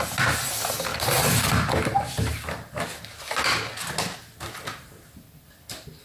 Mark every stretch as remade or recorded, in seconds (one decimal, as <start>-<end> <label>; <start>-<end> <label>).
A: 0.0-0.9 recorded; 0.9-1.7 remade; 1.7-6.0 recorded